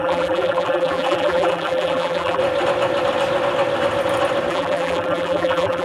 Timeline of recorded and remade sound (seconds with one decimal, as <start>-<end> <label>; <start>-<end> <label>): 0.0-2.4 remade; 2.4-4.5 recorded; 4.5-5.8 remade